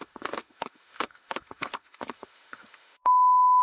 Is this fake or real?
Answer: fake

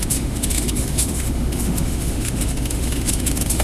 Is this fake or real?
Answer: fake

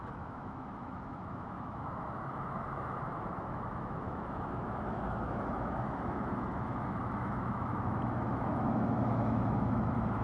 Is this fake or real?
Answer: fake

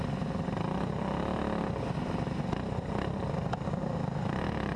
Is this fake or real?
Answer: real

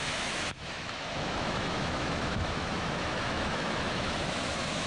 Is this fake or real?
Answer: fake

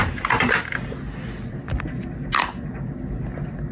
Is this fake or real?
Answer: real